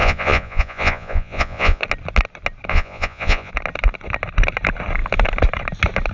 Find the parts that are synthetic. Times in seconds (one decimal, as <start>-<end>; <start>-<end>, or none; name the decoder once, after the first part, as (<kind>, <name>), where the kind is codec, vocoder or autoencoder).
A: 0.0-1.8 (vocoder, Vocos); 2.7-3.5